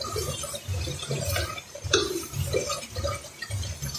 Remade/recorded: remade